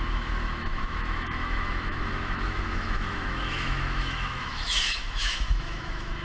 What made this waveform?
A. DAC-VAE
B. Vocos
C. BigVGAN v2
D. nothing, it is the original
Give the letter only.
A